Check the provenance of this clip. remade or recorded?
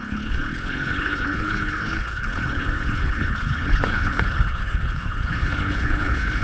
remade